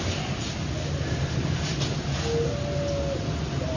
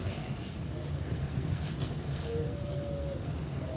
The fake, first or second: second